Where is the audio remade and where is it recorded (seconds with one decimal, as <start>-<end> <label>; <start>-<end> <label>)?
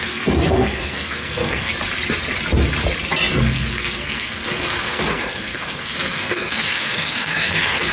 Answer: 0.0-1.7 remade; 1.7-3.3 recorded; 3.3-7.9 remade